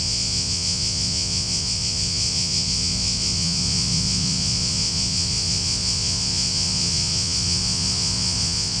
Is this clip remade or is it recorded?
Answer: remade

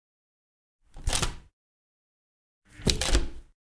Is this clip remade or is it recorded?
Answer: recorded